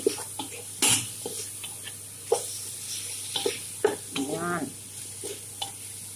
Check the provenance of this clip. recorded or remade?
recorded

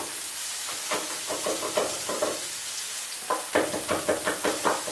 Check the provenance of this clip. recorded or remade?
recorded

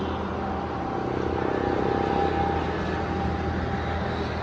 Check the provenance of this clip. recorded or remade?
recorded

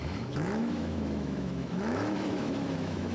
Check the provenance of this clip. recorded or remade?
remade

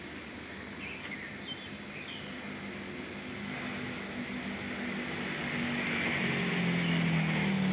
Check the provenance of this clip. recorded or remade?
recorded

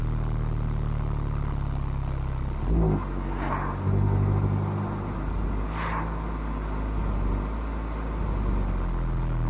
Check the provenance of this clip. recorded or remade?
recorded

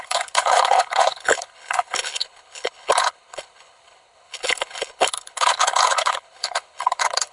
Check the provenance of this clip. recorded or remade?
remade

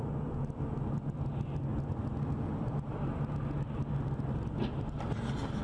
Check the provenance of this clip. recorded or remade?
recorded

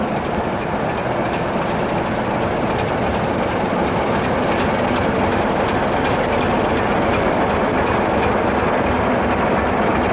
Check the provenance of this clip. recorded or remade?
recorded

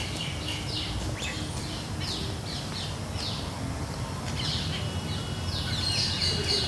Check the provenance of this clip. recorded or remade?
recorded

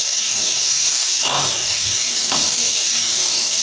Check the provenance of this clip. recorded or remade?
remade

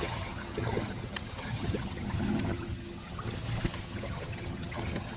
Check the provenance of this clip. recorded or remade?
remade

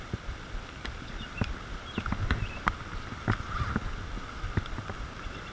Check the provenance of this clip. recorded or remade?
recorded